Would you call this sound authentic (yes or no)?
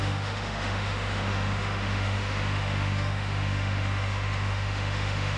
no